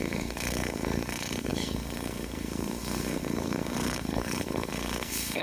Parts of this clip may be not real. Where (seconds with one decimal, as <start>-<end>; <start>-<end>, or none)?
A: 0.0-5.4